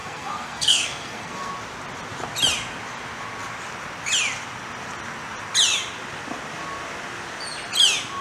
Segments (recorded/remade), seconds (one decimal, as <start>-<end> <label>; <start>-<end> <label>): 0.0-1.5 remade; 1.5-8.2 recorded

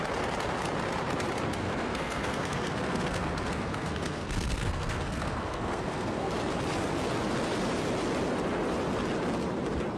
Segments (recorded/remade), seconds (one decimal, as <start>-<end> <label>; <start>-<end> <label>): 0.0-1.6 recorded; 1.6-6.3 remade; 6.3-10.0 recorded